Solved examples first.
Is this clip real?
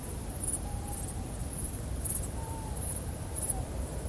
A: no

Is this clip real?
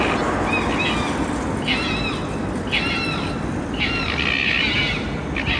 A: yes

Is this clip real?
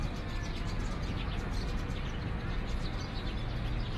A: yes